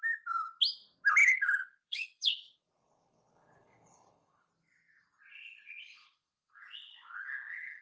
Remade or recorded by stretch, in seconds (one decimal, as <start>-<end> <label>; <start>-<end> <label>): 0.0-1.2 recorded; 1.2-4.5 remade; 4.5-5.3 recorded; 5.3-7.8 remade